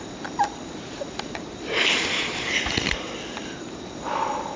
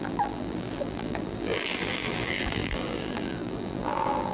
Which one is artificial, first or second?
second